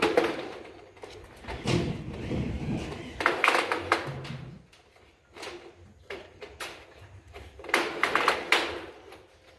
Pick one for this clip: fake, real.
real